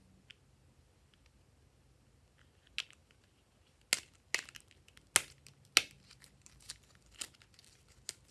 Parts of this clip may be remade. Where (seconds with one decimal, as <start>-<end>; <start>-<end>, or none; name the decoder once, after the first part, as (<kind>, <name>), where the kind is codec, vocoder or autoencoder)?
none